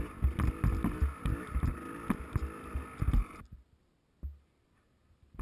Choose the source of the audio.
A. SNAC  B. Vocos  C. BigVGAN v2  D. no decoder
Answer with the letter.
D